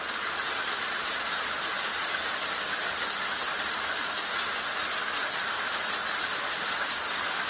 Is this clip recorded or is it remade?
recorded